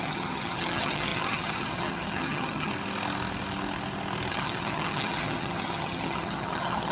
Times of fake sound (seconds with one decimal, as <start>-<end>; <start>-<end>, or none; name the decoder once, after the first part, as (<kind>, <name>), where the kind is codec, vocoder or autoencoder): 0.0-2.7 (vocoder, HiFi-GAN); 4.3-6.9